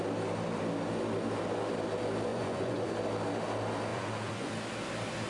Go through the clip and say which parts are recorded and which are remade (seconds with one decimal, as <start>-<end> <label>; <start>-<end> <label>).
0.0-2.3 recorded; 2.3-2.9 remade; 2.9-3.9 recorded; 3.9-4.5 remade; 4.5-5.3 recorded